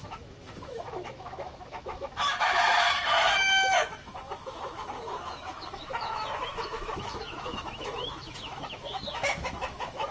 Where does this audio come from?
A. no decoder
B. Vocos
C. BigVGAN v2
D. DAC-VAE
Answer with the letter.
D